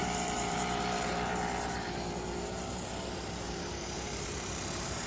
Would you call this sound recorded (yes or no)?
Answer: no